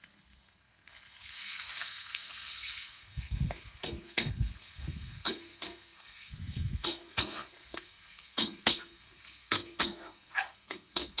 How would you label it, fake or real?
fake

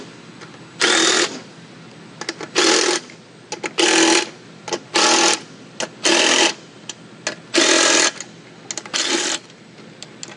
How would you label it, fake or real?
real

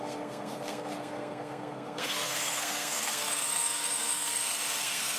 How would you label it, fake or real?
fake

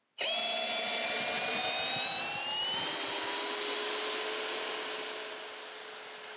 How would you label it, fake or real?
real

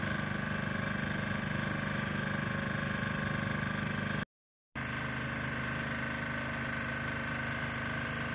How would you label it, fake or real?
real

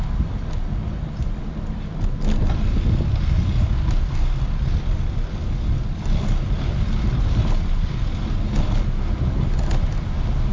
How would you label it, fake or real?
real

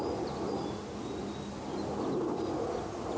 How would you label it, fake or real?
real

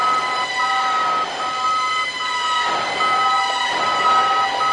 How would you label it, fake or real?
real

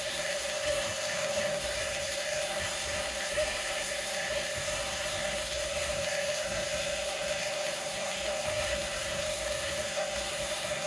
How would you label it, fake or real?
fake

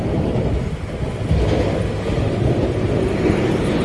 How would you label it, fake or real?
real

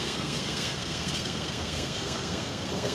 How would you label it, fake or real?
fake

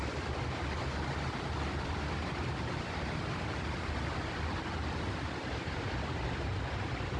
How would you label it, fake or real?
real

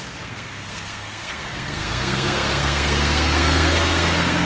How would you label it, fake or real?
fake